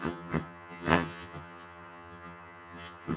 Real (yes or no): no